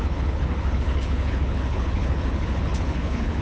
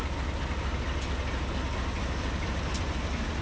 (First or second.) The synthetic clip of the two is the first